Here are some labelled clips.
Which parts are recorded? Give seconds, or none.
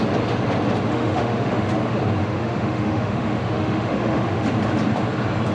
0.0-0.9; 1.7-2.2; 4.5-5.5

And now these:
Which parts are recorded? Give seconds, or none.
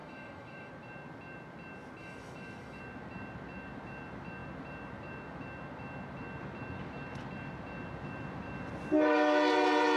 0.7-2.0; 2.8-10.0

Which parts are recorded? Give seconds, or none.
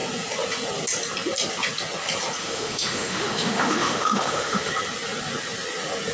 0.0-2.4; 4.7-6.1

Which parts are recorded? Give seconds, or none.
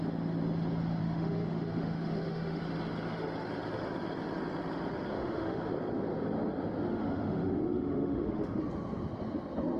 0.0-1.0; 2.6-5.1; 5.6-6.9; 8.6-9.8